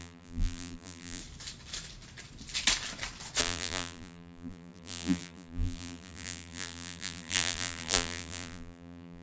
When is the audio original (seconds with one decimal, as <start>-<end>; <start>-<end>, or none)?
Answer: 1.2-3.4

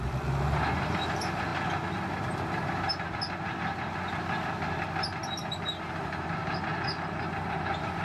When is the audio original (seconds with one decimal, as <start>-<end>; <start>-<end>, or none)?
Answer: 1.5-2.2; 2.9-5.8; 6.4-7.5

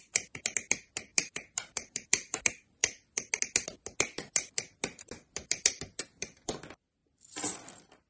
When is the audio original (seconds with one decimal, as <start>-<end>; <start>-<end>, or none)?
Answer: 0.0-1.1; 2.4-8.1

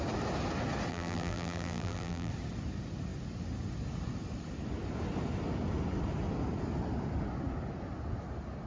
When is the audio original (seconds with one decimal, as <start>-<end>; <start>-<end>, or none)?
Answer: 0.0-0.9; 2.3-8.7